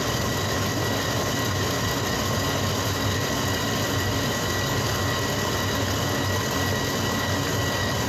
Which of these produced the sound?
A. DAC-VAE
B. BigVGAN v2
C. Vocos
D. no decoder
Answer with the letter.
D